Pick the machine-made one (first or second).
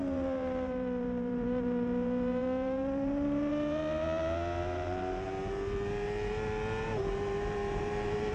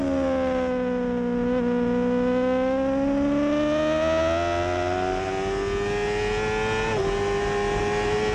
first